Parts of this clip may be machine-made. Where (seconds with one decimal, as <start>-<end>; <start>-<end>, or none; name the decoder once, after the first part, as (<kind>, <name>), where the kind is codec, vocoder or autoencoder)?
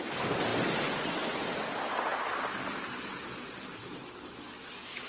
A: 3.8-5.1 (autoencoder, DAC-VAE)